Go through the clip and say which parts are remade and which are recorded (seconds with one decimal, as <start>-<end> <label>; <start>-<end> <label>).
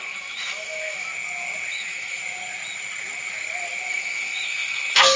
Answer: 0.0-1.1 remade; 1.1-1.7 recorded; 1.7-2.2 remade; 2.2-3.9 recorded; 3.9-5.2 remade